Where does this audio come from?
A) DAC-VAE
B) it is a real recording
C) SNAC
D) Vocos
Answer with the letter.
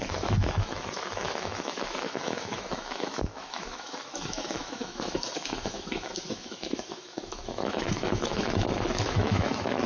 A